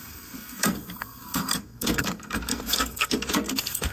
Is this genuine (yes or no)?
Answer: no